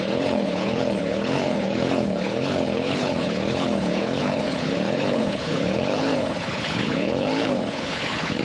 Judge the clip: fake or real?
fake